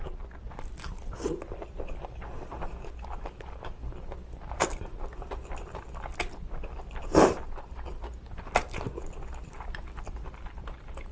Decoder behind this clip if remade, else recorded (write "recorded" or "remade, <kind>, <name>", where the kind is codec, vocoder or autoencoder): recorded